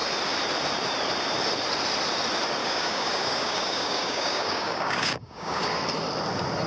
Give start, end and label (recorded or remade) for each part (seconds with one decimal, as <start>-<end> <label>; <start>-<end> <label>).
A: 0.0-2.6 recorded; 2.6-5.8 remade; 5.8-6.7 recorded